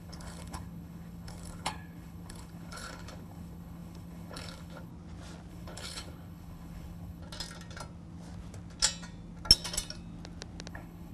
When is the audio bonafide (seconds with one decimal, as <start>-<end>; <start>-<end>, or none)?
4.9-5.5; 7.2-10.7